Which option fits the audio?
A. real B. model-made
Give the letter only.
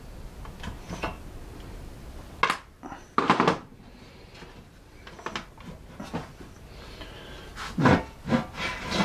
A